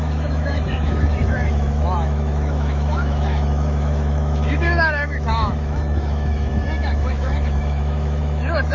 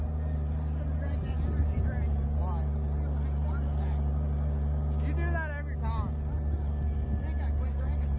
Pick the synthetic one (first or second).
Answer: first